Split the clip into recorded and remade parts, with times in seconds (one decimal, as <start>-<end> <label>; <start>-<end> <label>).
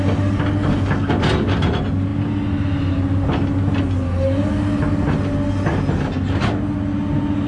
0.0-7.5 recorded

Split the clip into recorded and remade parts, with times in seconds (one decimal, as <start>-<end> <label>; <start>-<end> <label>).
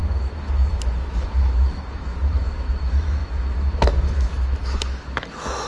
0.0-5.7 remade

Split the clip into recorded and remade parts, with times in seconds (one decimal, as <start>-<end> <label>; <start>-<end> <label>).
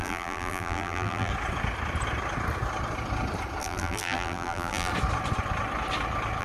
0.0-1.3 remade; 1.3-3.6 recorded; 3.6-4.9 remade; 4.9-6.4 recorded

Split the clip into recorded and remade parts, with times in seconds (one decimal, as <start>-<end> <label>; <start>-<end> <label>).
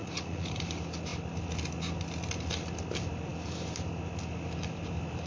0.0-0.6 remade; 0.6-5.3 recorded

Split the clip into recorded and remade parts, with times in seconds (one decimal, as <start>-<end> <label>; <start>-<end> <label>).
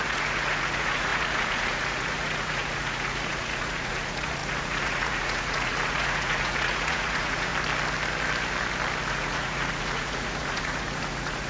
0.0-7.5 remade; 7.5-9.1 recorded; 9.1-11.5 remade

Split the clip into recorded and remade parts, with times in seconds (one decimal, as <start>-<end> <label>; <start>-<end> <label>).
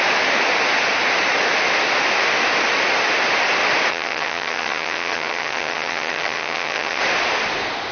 0.0-3.9 recorded; 3.9-7.0 remade; 7.0-7.9 recorded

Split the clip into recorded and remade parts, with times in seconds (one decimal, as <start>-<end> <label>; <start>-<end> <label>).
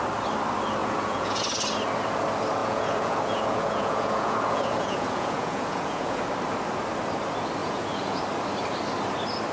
0.0-0.8 recorded; 0.8-1.4 remade; 1.4-2.6 recorded; 2.6-6.2 remade; 6.2-7.6 recorded; 7.6-8.2 remade; 8.2-9.5 recorded